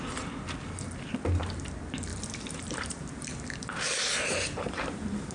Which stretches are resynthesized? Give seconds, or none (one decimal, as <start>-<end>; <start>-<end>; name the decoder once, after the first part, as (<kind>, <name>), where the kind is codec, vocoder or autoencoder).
2.1-5.3 (vocoder, BigVGAN v2)